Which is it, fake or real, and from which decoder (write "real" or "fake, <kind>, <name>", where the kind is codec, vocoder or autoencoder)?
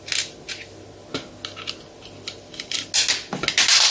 real